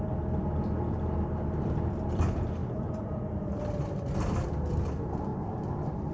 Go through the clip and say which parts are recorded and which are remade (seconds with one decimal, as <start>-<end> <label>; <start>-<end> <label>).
0.0-2.6 recorded; 2.6-3.2 remade; 3.2-6.1 recorded